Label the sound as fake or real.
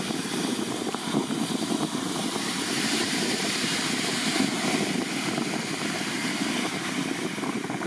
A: fake